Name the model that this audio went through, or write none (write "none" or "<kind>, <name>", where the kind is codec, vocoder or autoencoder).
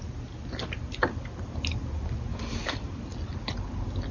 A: none